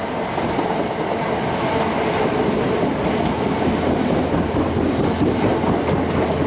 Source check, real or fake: real